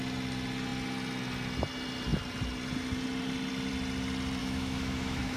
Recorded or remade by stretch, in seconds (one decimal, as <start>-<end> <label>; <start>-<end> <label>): 0.0-4.4 recorded; 4.4-5.4 remade

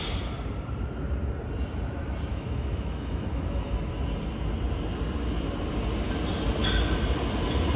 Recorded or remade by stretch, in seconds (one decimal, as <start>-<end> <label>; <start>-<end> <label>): 0.0-2.3 recorded; 2.3-3.9 remade; 3.9-7.8 recorded

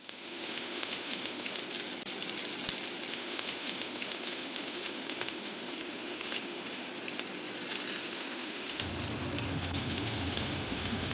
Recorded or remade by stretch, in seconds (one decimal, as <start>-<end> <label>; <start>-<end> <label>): 0.0-1.6 remade; 1.6-3.1 recorded; 3.1-6.9 remade; 6.9-8.0 recorded; 8.0-8.9 remade; 8.9-9.5 recorded; 9.5-11.1 remade

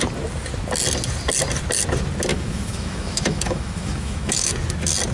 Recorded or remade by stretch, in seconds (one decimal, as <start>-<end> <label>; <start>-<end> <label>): 0.0-2.3 recorded; 2.3-4.5 remade; 4.5-5.1 recorded

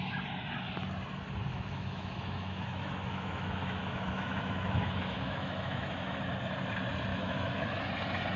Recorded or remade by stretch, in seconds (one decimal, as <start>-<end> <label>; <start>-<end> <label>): 0.0-1.5 recorded; 1.5-6.2 remade; 6.2-7.1 recorded; 7.1-7.8 remade; 7.8-8.4 recorded

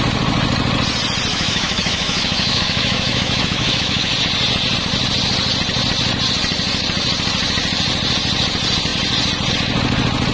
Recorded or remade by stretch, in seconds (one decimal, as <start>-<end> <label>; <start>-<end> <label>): 0.0-1.3 recorded; 1.3-4.1 remade; 4.1-10.3 recorded

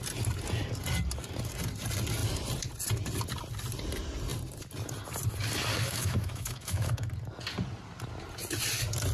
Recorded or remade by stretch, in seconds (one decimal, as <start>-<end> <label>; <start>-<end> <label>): 0.0-5.7 recorded; 5.7-7.1 remade; 7.1-9.1 recorded